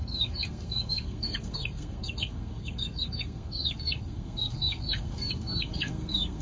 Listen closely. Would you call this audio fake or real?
fake